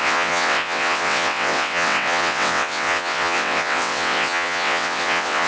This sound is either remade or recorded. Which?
remade